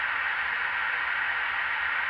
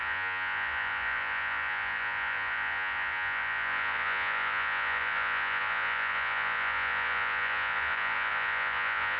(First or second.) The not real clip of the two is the second